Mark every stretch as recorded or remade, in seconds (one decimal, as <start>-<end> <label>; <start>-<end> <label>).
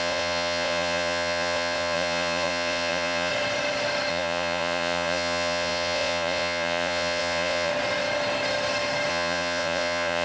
0.0-3.3 remade; 3.3-4.1 recorded; 4.1-7.7 remade; 7.7-9.1 recorded; 9.1-10.2 remade